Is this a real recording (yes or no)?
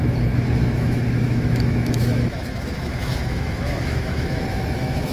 no